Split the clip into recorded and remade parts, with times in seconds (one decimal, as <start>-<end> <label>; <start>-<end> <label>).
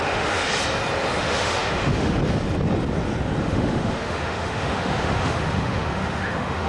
0.0-0.5 remade; 0.5-1.2 recorded; 1.2-2.2 remade; 2.2-3.4 recorded; 3.4-6.7 remade